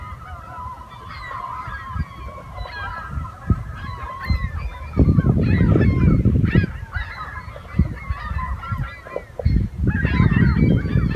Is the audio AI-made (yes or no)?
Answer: no